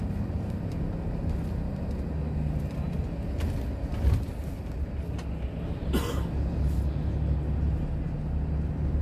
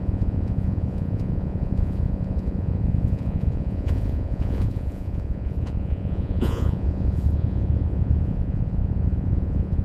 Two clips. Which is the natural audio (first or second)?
first